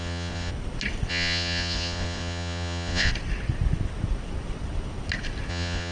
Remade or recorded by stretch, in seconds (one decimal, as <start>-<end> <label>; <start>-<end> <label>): 0.0-0.5 remade; 0.5-1.1 recorded; 1.1-3.1 remade; 3.1-5.5 recorded; 5.5-5.9 remade